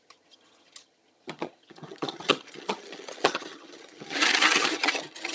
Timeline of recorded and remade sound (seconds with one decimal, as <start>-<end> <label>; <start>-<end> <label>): 0.0-5.3 remade